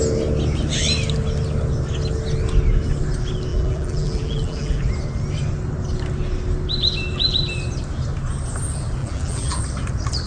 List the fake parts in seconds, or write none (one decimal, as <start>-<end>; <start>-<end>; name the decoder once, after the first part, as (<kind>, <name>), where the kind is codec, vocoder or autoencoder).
3.5-4.8 (vocoder, BigVGAN v2); 9.0-9.6